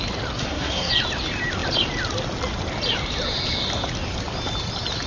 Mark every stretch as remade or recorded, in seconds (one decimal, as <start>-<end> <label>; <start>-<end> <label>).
0.0-0.4 recorded; 0.4-0.9 remade; 0.9-5.1 recorded